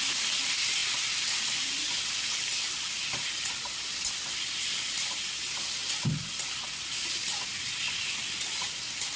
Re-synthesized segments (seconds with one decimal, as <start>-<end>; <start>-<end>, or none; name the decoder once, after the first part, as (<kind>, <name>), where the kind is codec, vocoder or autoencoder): none